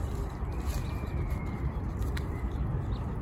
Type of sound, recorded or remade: recorded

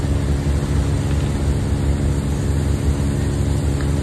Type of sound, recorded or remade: recorded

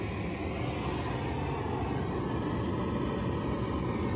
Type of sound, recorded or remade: recorded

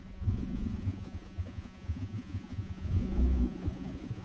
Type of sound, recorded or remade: remade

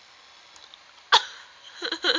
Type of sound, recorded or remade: recorded